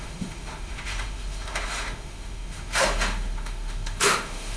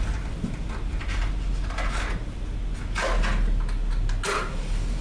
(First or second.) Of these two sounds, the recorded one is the second